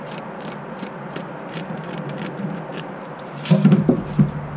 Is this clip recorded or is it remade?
recorded